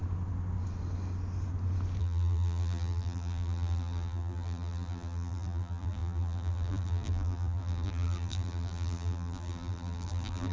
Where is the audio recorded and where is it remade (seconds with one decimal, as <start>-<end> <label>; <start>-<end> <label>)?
0.0-2.0 recorded; 2.0-10.5 remade